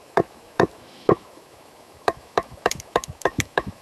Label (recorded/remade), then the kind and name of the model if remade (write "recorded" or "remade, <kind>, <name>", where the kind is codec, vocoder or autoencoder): remade, autoencoder, DAC-VAE